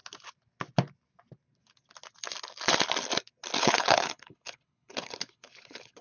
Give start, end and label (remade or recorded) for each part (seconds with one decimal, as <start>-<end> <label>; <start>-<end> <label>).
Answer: 0.0-3.6 recorded; 3.6-6.0 remade